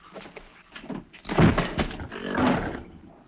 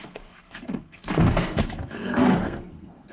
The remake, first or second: second